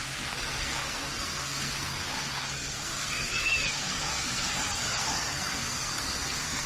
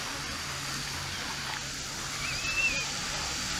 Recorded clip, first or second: second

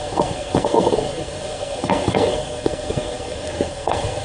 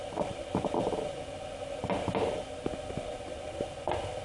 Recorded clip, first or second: second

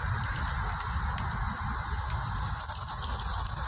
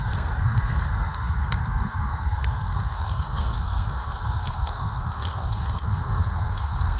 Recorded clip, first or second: first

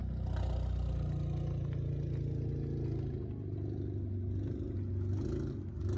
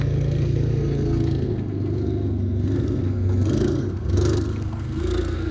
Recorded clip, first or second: first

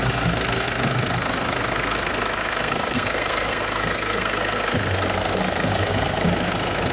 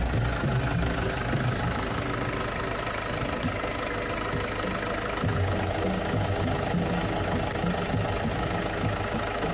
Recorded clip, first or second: second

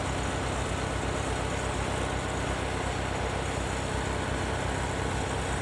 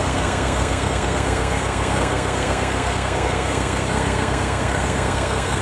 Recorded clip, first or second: first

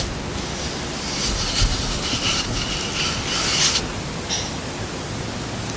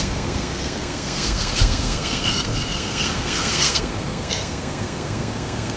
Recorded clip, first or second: first